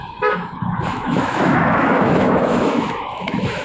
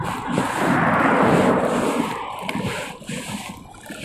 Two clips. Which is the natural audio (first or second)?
second